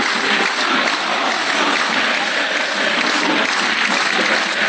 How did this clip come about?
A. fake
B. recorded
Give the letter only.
B